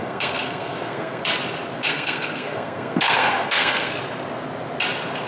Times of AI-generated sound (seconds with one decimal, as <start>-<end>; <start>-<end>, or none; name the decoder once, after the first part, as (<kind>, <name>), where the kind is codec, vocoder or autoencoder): 0.0-1.2 (codec, SNAC); 1.8-3.9